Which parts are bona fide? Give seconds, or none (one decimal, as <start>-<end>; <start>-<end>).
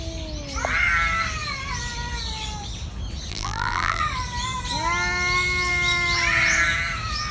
0.0-3.3; 4.0-7.3